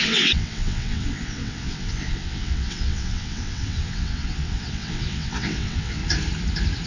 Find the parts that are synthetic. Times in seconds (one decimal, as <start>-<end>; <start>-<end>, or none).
0.0-6.0